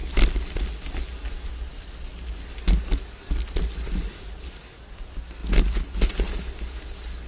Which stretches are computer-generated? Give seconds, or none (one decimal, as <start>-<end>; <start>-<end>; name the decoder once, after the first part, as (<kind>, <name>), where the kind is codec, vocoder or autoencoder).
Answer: none